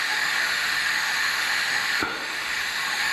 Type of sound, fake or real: fake